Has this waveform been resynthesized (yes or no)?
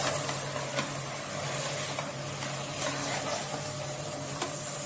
no